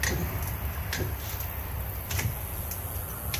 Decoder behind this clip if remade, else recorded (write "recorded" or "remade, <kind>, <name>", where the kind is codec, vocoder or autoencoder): recorded